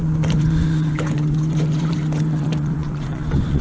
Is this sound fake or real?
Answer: fake